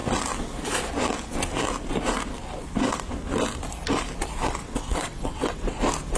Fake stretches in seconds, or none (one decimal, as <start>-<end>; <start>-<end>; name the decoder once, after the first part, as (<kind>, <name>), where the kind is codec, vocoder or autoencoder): 4.6-5.8 (vocoder, WaveNeXt)